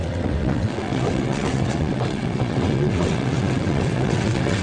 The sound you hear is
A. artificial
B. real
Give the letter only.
A